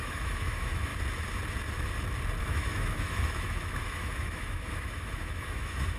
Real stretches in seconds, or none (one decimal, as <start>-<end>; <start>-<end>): 0.9-2.4